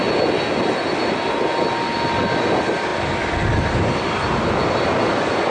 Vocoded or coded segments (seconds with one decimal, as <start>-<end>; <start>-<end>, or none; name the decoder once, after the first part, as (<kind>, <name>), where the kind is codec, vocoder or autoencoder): none